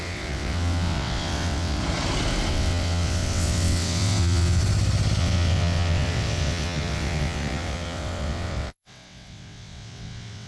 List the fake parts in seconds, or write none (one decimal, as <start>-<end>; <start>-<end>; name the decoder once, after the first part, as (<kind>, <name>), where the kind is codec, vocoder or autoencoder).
0.0-1.8 (vocoder, WaveNeXt); 2.5-4.6; 5.2-10.5

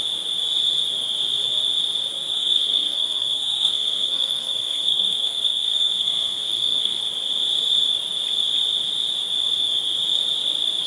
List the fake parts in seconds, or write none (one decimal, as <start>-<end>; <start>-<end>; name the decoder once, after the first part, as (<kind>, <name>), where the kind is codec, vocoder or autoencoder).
2.3-7.0 (codec, SNAC)

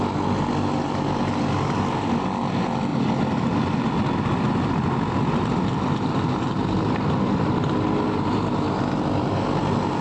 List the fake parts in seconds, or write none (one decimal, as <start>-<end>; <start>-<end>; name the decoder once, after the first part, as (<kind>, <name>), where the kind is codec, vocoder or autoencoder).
none

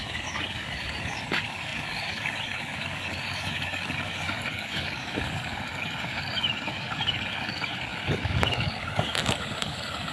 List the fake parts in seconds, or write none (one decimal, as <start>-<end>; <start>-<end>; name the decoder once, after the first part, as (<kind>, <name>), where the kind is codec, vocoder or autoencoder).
0.0-10.1 (codec, DAC)

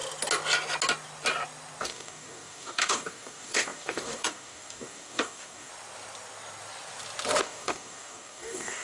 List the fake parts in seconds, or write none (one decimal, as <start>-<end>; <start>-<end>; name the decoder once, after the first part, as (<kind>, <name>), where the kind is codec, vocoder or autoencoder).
1.8-5.7 (codec, DAC); 7.4-8.8

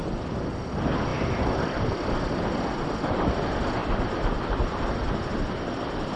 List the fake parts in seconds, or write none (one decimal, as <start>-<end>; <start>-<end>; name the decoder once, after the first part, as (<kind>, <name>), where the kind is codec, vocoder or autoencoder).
1.1-1.8 (vocoder, BigVGAN v2); 3.8-4.8

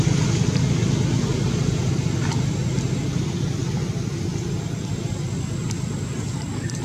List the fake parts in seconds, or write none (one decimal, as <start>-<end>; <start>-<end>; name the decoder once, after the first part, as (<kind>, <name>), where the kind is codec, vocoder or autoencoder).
none

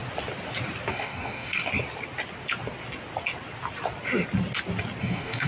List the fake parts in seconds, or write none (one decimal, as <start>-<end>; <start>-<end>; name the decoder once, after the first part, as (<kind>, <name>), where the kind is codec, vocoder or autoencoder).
0.9-1.7 (codec, DAC); 5.0-5.5